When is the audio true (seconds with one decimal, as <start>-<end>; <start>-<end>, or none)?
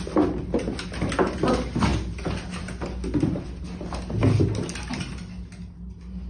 0.0-6.3